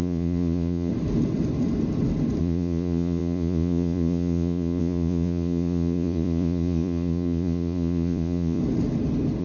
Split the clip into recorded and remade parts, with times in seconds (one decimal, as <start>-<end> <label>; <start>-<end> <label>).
0.0-0.9 remade; 0.9-2.4 recorded; 2.4-8.6 remade; 8.6-9.4 recorded